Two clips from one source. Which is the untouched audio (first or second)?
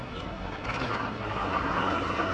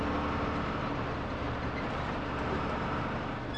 second